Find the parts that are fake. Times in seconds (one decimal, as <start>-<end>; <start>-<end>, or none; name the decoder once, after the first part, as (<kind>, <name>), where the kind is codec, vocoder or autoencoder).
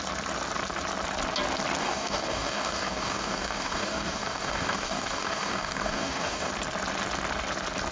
1.8-6.5 (codec, DAC)